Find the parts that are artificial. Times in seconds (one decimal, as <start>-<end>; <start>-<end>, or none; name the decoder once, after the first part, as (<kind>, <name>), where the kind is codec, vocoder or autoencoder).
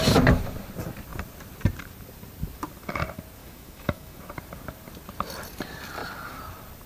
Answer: 3.4-4.2 (autoencoder, DAC-VAE)